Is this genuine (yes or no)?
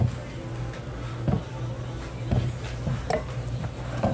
yes